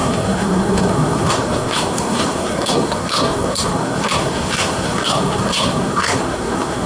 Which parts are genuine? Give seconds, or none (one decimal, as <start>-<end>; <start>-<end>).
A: none